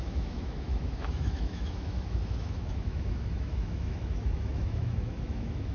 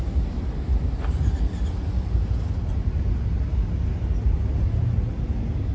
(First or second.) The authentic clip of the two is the second